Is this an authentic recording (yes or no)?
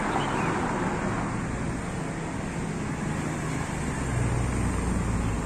yes